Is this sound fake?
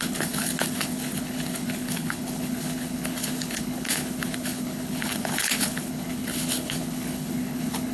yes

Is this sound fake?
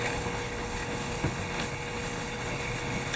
yes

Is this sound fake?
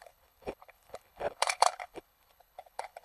yes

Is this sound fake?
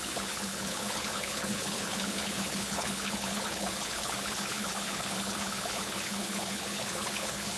yes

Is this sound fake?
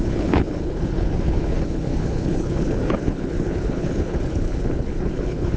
yes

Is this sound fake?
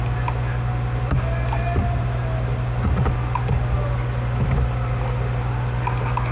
no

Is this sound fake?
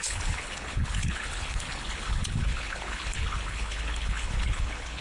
yes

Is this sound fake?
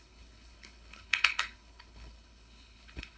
yes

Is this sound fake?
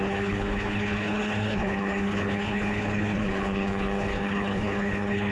yes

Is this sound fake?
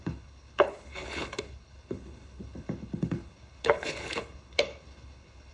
yes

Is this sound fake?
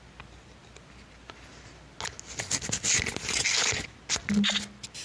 no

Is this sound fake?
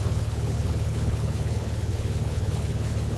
yes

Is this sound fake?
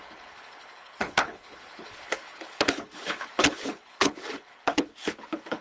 yes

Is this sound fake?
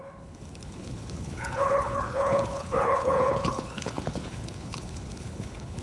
yes